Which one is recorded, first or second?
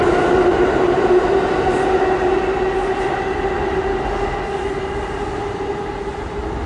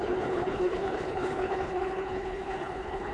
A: first